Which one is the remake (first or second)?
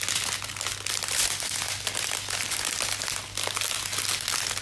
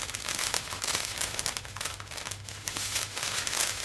second